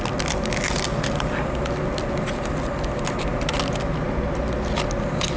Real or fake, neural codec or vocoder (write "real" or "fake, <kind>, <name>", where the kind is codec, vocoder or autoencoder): real